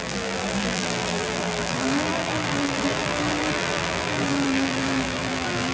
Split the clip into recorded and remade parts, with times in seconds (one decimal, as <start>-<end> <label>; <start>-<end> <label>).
0.0-5.7 remade